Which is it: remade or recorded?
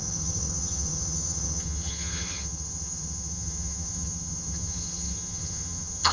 remade